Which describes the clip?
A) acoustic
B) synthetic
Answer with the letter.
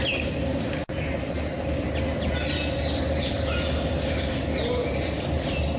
A